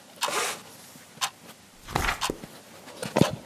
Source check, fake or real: real